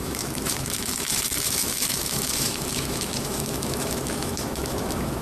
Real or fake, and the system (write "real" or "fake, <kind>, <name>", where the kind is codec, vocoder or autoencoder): fake, autoencoder, DAC-VAE